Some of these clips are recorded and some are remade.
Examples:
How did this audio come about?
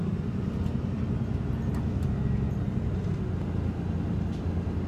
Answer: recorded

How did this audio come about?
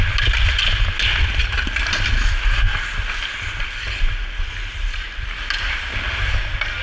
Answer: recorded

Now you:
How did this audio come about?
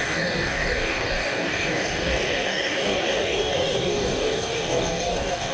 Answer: remade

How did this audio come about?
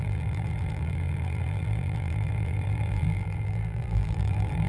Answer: remade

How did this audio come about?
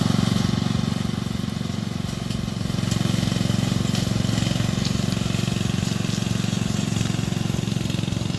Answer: recorded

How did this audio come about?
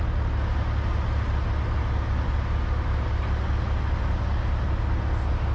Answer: recorded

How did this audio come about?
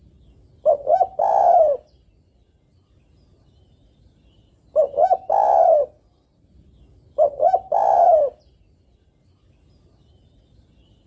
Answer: recorded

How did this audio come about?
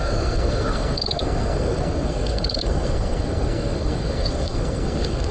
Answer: remade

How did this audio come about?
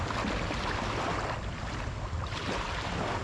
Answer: recorded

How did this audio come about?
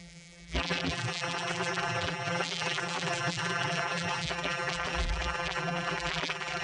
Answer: remade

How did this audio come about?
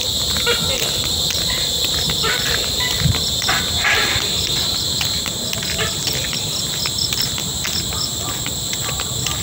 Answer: recorded